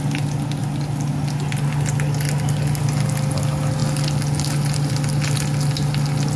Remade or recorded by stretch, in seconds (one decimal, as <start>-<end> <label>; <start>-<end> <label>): 0.0-6.4 recorded